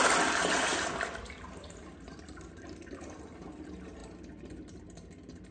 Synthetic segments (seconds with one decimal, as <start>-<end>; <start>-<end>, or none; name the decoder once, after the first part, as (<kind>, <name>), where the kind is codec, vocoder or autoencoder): none